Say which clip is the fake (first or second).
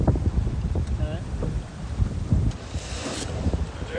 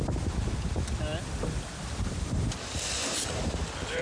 first